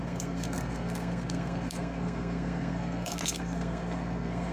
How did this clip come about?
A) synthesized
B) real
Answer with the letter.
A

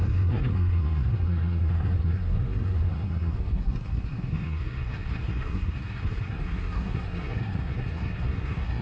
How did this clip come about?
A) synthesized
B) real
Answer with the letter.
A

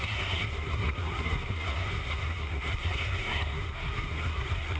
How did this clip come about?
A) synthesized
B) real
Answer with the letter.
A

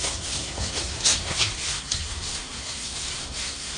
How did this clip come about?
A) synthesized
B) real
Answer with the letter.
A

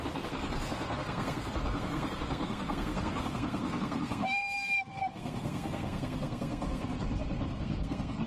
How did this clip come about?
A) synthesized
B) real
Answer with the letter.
A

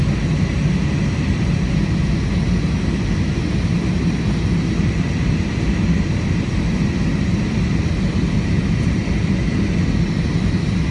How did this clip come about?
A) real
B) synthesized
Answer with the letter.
A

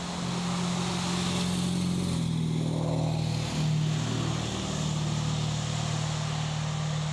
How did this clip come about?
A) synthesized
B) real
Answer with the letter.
B